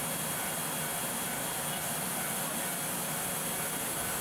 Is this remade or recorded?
recorded